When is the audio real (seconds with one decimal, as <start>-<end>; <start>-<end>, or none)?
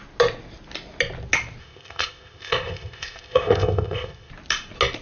0.0-1.6; 4.3-5.0